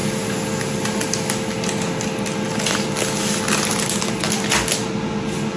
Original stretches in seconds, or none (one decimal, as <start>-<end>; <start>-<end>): 0.0-5.6